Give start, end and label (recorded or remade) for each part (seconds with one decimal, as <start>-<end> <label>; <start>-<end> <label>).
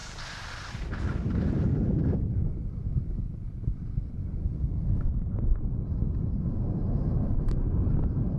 0.0-4.4 recorded; 4.4-5.6 remade; 5.6-8.4 recorded